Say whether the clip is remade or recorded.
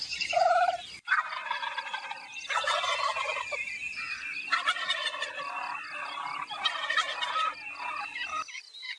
recorded